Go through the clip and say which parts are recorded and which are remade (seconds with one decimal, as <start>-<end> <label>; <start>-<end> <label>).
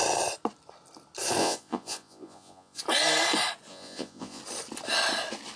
0.0-1.4 recorded; 1.4-2.8 remade; 2.8-3.7 recorded; 3.7-4.4 remade; 4.4-5.6 recorded